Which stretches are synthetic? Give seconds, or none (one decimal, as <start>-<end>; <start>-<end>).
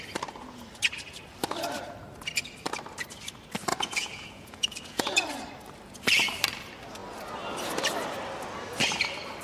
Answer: 3.7-5.3